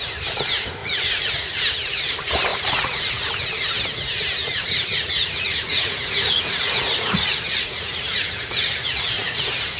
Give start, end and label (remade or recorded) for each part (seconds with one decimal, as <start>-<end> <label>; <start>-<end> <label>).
0.0-0.8 recorded; 0.8-1.3 remade; 1.3-2.5 recorded; 2.5-3.3 remade; 3.3-4.4 recorded; 4.4-9.4 remade; 9.4-9.8 recorded